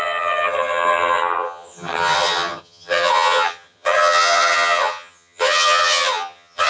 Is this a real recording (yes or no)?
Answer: no